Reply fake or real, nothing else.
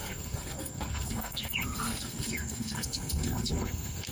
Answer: fake